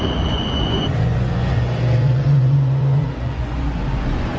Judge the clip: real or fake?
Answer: fake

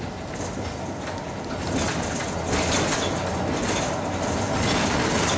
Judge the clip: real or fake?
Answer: real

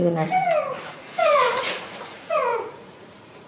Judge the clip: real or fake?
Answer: fake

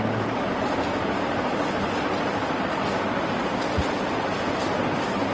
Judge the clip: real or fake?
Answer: real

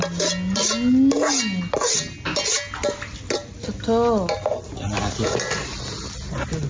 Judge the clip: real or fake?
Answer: real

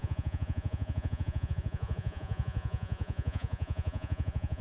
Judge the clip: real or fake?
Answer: fake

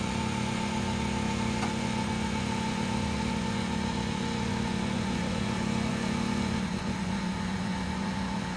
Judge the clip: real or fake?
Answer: fake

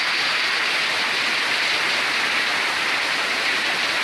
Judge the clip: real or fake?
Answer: real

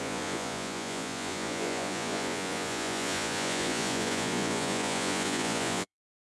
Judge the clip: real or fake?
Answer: fake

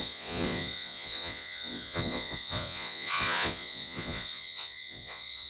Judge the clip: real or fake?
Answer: fake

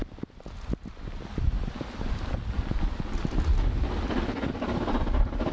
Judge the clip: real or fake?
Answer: real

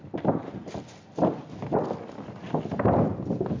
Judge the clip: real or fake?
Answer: real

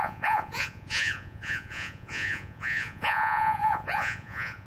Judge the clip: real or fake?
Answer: fake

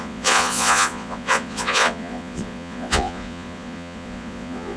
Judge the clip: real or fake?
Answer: fake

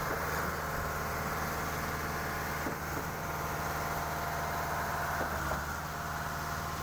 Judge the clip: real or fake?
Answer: real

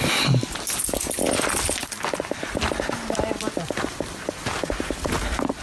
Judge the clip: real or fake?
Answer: real